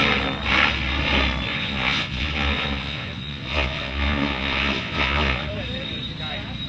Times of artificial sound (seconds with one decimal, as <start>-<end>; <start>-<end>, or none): 1.5-5.5